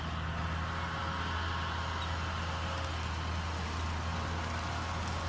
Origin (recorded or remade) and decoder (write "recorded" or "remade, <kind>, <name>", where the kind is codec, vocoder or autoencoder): recorded